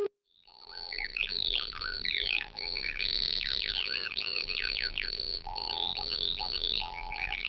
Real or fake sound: fake